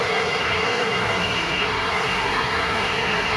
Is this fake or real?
fake